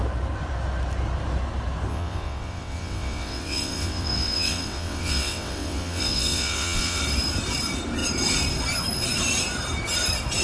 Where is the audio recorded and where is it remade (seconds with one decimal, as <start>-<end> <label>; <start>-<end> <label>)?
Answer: 0.0-1.9 recorded; 1.9-7.0 remade; 7.0-10.4 recorded